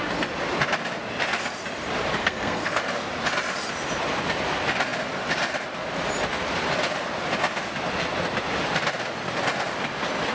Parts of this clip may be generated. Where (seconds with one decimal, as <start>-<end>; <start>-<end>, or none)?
2.2-2.8